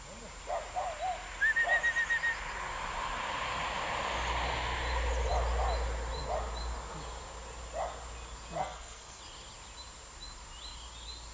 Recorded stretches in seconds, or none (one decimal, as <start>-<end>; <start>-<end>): 0.0-8.6; 9.2-11.3